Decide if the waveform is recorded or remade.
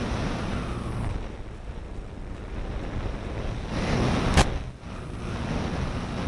recorded